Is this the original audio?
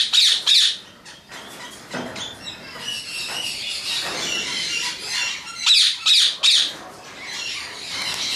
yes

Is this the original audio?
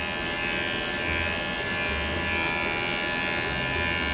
yes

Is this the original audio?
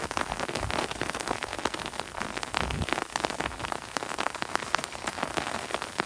no